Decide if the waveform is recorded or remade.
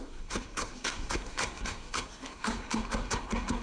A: remade